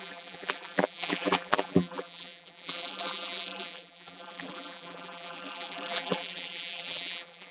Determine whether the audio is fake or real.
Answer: fake